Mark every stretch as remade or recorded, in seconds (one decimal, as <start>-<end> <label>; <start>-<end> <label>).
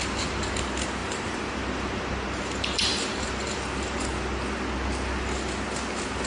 0.0-1.0 recorded; 1.0-4.0 remade; 4.0-6.3 recorded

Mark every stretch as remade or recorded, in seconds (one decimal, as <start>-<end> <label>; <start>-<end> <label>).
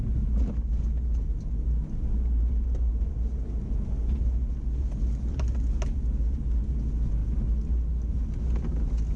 0.0-9.2 recorded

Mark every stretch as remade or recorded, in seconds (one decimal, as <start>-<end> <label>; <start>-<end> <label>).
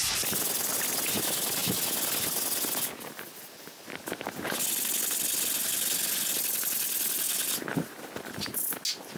0.0-9.2 recorded